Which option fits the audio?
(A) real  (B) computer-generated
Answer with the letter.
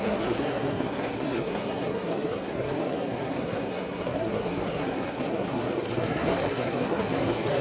B